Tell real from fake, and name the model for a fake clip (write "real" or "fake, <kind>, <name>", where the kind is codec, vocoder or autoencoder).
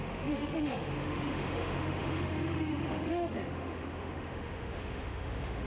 fake, autoencoder, DAC-VAE